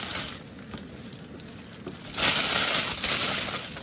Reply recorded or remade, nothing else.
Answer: recorded